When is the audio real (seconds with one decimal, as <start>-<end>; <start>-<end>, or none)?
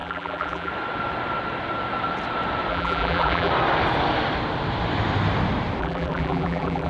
0.7-2.7; 3.5-5.8